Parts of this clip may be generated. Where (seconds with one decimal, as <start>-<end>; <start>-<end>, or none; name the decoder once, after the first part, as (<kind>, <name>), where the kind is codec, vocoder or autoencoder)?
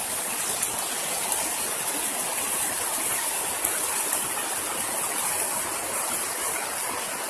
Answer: 2.1-3.3 (vocoder, BigVGAN v2)